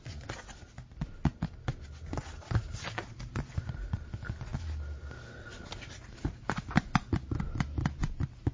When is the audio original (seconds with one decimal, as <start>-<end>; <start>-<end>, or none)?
0.0-8.5